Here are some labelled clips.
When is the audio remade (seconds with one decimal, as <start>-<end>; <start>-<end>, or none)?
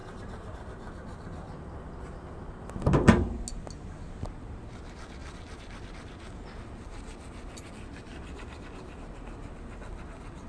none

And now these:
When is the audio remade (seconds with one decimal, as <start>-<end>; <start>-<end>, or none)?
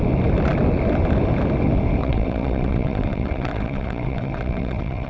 2.0-5.1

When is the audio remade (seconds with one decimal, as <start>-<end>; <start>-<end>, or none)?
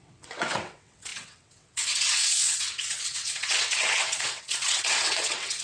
0.0-5.6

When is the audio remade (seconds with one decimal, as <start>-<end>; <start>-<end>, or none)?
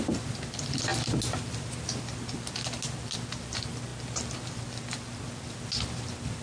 none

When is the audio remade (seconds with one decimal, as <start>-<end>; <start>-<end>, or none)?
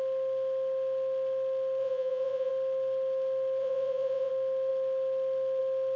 1.8-2.5; 3.6-4.3